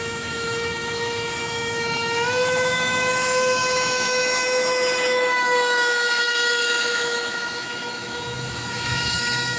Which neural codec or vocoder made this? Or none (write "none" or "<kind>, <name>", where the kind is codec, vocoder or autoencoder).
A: autoencoder, DAC-VAE